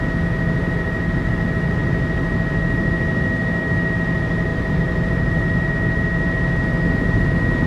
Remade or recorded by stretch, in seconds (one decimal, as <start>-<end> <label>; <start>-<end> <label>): 0.0-4.5 recorded; 4.5-5.7 remade; 5.7-7.7 recorded